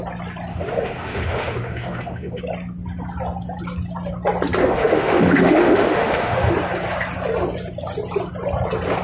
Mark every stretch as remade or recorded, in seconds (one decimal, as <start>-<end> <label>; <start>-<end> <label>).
0.0-0.5 recorded; 0.5-2.4 remade; 2.4-4.6 recorded; 4.6-6.5 remade; 6.5-9.0 recorded